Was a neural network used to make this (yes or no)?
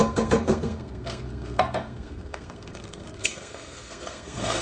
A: yes